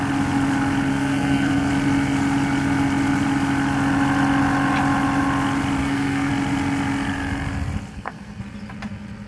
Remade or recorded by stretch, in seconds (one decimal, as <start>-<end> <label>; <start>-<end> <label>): 0.0-0.9 recorded; 0.9-1.7 remade; 1.7-5.8 recorded; 5.8-6.3 remade; 6.3-7.9 recorded; 7.9-8.4 remade; 8.4-9.3 recorded